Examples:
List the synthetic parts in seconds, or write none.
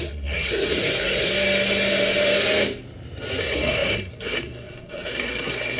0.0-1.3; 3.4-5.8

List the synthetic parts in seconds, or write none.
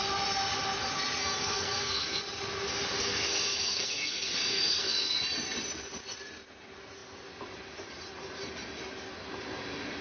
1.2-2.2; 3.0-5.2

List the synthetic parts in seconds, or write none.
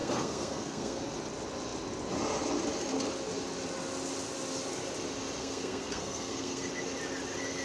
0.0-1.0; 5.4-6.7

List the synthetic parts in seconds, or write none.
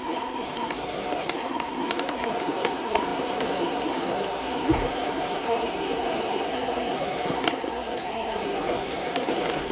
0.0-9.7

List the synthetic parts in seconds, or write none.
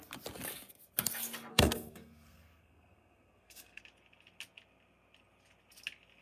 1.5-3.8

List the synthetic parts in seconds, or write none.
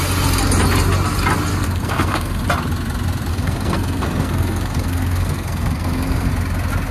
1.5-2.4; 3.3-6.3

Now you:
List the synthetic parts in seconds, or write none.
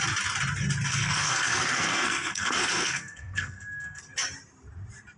0.9-4.0